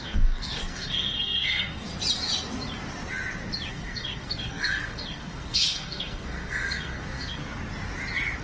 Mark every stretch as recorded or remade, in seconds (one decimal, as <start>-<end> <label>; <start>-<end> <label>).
0.0-1.9 remade; 1.9-3.7 recorded; 3.7-7.4 remade; 7.4-8.4 recorded